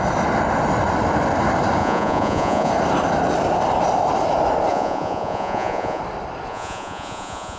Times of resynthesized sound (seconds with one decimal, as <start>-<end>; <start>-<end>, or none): 1.8-2.7; 4.7-6.0; 6.5-7.6